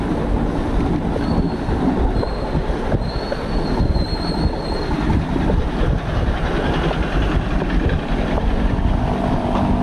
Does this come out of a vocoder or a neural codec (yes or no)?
no